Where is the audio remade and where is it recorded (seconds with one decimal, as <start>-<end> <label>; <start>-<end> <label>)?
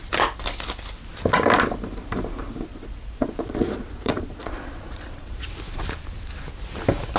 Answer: 0.0-2.7 recorded; 2.7-5.5 remade; 5.5-7.2 recorded